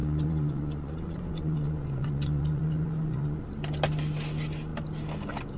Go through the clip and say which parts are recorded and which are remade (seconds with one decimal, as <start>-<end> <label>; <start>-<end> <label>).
0.0-3.4 remade; 3.4-5.6 recorded